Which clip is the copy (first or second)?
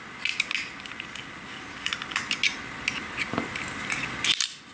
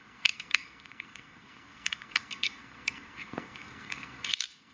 second